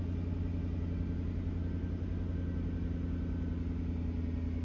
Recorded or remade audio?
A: recorded